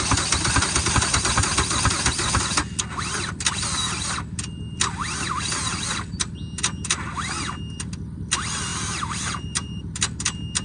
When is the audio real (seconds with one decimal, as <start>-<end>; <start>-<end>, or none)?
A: 0.0-8.7; 9.9-10.6